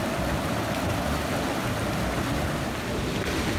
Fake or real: real